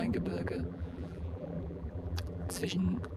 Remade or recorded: remade